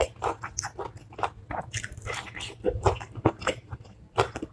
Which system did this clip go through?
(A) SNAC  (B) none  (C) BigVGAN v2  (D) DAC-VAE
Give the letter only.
B